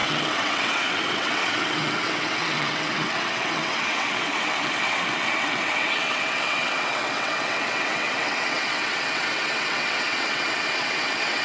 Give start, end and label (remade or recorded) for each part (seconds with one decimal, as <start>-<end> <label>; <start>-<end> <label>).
0.0-11.4 remade

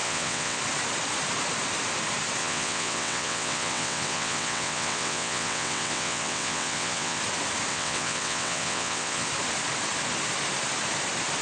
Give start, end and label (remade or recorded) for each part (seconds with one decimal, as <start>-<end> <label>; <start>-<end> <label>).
0.0-0.6 remade; 0.6-2.4 recorded; 2.4-7.2 remade; 7.2-7.7 recorded; 7.7-9.3 remade; 9.3-11.4 recorded

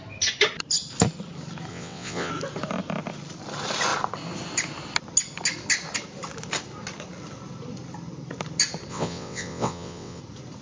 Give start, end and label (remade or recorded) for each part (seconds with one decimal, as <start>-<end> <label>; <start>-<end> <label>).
0.0-1.7 recorded; 1.7-2.3 remade; 2.3-8.9 recorded; 8.9-10.2 remade; 10.2-10.6 recorded

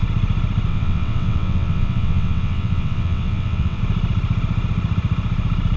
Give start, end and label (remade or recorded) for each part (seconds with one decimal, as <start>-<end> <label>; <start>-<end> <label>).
0.0-0.7 recorded; 0.7-3.8 remade; 3.8-5.8 recorded

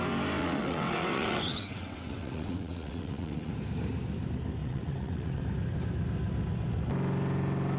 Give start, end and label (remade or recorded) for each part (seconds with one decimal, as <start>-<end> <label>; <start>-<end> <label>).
0.0-0.4 recorded; 0.4-3.5 remade; 3.5-4.6 recorded; 4.6-5.4 remade; 5.4-7.8 recorded

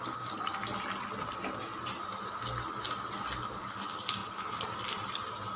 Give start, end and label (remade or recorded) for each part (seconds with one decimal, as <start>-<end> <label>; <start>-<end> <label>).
0.0-5.6 recorded

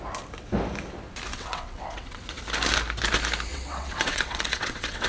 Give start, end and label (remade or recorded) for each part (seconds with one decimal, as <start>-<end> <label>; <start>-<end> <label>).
0.0-1.3 recorded; 1.3-2.4 remade; 2.4-3.5 recorded; 3.5-5.1 remade